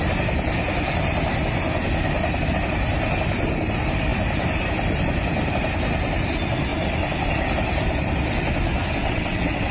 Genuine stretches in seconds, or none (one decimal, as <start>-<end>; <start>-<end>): 0.0-9.0